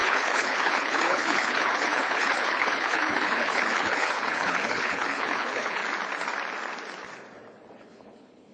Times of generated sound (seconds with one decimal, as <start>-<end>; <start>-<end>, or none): 0.0-5.8; 7.8-8.5